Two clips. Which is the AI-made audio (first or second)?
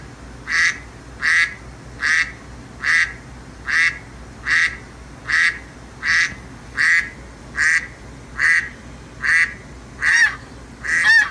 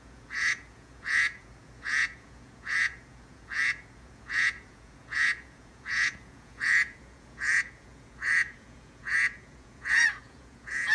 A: second